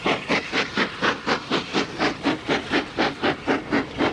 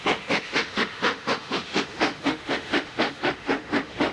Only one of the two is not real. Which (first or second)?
second